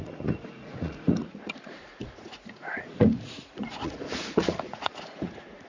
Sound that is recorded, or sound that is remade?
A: remade